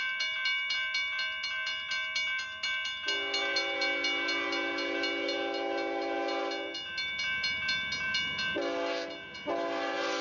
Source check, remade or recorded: recorded